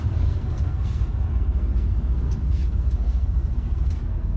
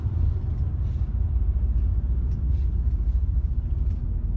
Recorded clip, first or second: second